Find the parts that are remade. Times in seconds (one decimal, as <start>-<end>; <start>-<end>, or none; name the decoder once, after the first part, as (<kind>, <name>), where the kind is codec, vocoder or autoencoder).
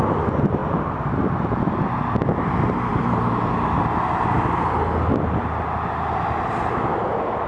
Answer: 2.9-3.5 (vocoder, BigVGAN v2)